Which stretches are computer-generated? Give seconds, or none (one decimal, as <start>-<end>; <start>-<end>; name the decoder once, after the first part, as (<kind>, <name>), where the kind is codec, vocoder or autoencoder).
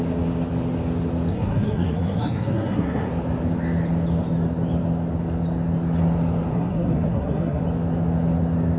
1.3-3.1 (codec, SNAC); 6.5-7.6